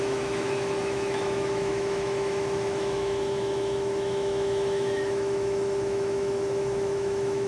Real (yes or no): no